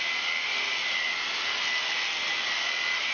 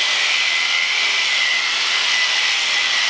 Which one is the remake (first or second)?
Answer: second